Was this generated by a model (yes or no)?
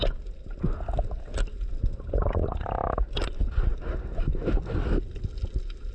no